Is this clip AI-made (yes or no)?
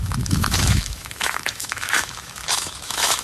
yes